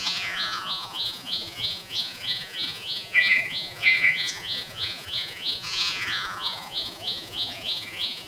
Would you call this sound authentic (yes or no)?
no